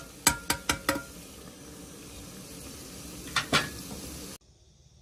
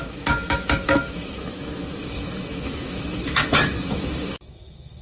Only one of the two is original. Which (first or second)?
first